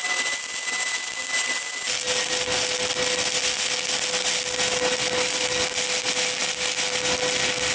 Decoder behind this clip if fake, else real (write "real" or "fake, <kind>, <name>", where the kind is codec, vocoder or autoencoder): real